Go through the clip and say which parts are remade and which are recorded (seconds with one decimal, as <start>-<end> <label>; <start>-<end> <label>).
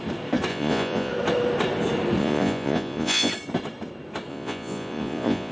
0.0-0.5 recorded; 0.5-1.1 remade; 1.1-2.2 recorded; 2.2-3.3 remade; 3.3-4.3 recorded; 4.3-5.5 remade